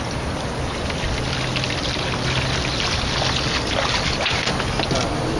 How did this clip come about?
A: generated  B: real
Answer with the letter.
B